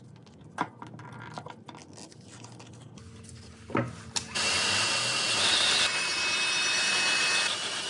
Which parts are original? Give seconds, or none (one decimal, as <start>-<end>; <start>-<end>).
0.0-7.9